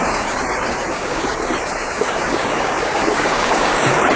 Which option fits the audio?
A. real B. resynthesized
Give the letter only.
B